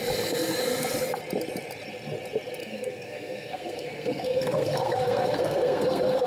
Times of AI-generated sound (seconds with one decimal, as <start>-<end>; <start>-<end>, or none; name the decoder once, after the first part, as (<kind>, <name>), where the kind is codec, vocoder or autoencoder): 2.6-6.3 (codec, SNAC)